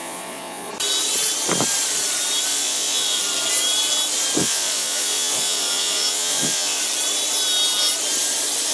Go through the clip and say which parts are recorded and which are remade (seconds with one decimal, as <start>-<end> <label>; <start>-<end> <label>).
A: 0.0-0.7 remade; 0.7-2.5 recorded; 2.5-3.2 remade; 3.2-4.4 recorded; 4.4-6.8 remade; 6.8-8.7 recorded